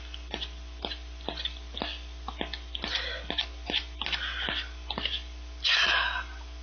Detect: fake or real real